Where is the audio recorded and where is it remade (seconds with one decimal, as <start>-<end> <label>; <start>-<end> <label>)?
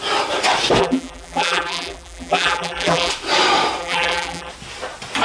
0.0-0.8 recorded; 0.8-3.1 remade; 3.1-3.8 recorded; 3.8-4.5 remade; 4.5-5.2 recorded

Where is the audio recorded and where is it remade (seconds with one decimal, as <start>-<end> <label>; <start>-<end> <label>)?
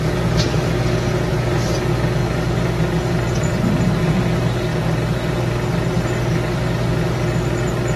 0.0-1.3 recorded; 1.3-1.8 remade; 1.8-8.0 recorded